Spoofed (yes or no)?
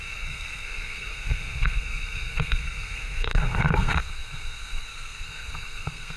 yes